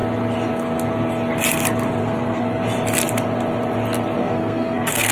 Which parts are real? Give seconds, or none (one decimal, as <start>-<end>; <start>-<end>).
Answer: 0.0-2.0; 2.6-4.2